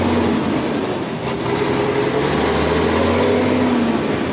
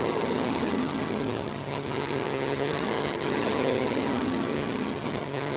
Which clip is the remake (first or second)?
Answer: second